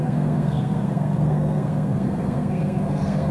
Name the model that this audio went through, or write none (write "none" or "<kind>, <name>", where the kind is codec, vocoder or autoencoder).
codec, SNAC